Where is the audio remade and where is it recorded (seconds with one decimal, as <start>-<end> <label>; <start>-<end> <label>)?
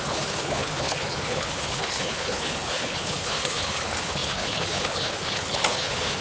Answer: 0.0-6.2 remade